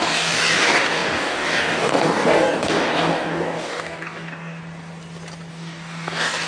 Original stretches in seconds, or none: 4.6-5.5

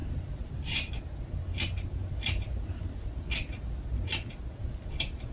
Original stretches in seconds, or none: 0.0-5.3